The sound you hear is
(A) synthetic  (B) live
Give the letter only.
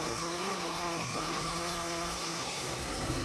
A